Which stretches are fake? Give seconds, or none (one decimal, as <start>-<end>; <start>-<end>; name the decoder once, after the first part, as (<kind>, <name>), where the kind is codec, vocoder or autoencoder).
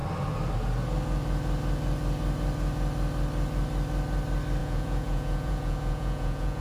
4.6-6.6 (vocoder, Vocos)